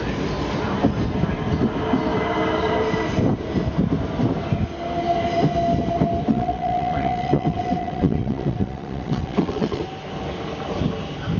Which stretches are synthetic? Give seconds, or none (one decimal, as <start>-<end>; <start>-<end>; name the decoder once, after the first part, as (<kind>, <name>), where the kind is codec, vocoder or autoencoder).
6.3-9.8 (vocoder, WaveNeXt)